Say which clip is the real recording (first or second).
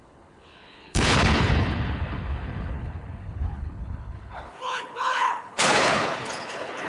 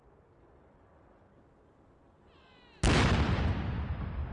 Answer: second